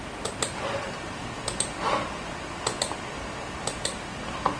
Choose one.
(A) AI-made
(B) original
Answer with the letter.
B